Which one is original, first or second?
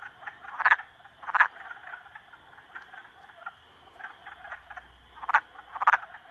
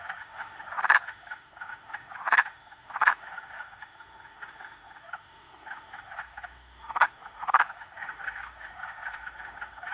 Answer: first